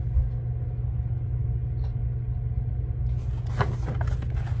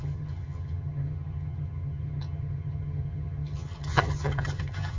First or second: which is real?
first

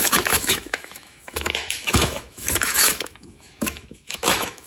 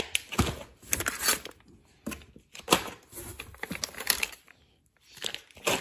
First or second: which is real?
second